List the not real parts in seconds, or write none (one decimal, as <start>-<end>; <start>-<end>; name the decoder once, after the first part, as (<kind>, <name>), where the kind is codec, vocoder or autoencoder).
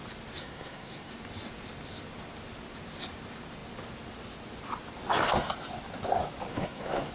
0.4-1.1 (codec, SNAC); 6.5-7.1